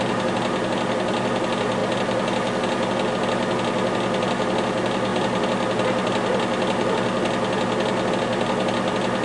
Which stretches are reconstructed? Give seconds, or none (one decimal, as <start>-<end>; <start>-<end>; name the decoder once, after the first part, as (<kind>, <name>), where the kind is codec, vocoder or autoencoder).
none